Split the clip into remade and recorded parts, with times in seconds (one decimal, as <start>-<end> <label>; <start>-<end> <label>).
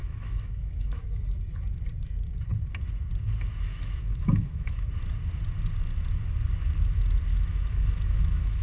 0.0-1.2 remade; 1.2-3.7 recorded; 3.7-4.9 remade; 4.9-7.3 recorded; 7.3-8.6 remade